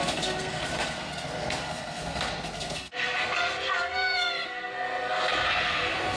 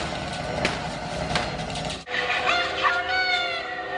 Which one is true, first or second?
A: second